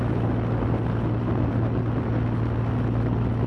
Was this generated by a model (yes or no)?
no